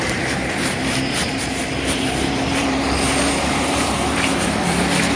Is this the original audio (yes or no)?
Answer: no